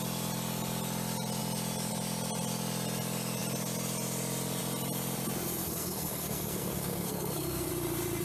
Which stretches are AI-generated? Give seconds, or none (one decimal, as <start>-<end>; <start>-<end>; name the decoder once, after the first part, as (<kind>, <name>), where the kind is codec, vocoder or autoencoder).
5.6-7.7 (codec, SNAC)